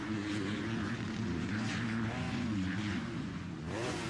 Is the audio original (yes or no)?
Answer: no